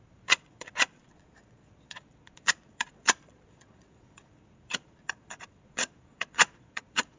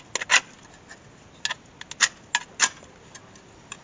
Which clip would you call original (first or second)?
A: second